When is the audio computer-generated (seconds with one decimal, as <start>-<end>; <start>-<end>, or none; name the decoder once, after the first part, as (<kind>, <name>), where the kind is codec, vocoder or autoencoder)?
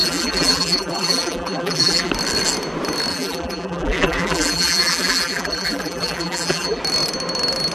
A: 0.0-2.1 (vocoder, BigVGAN v2); 3.1-6.8